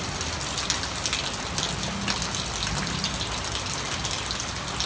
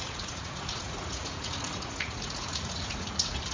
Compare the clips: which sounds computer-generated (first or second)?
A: second